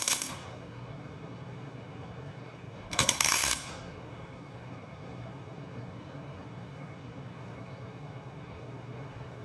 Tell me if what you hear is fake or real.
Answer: fake